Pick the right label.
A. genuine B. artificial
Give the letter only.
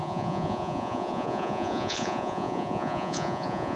B